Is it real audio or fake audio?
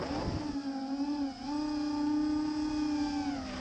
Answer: real